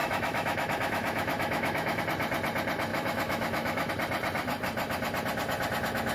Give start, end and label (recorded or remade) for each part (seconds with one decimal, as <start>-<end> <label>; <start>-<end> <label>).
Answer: 0.0-2.0 remade; 2.0-2.9 recorded; 2.9-3.9 remade; 3.9-6.1 recorded